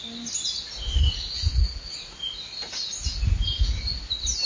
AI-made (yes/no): no